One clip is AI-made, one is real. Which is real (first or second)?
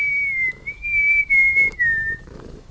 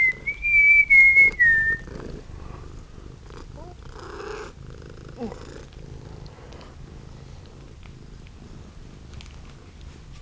second